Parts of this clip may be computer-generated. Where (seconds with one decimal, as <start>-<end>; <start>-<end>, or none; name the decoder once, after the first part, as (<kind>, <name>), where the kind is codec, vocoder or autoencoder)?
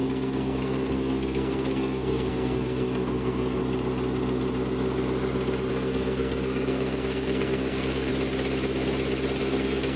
0.0-3.6 (codec, SNAC); 5.7-8.1; 9.4-10.0